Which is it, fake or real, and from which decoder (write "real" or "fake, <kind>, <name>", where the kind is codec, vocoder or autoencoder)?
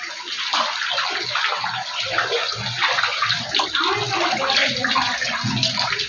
real